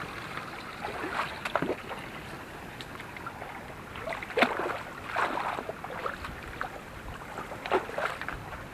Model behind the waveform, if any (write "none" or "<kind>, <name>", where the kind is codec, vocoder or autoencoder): none